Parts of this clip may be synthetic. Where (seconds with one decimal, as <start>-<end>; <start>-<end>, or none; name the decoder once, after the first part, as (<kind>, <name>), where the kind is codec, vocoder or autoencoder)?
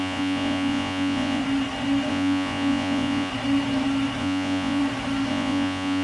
0.0-1.4 (vocoder, Vocos); 2.1-3.3; 4.2-4.8; 5.3-6.0